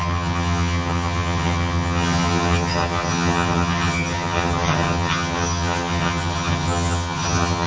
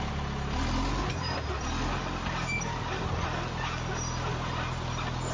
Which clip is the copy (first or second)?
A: first